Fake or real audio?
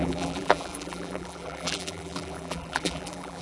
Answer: fake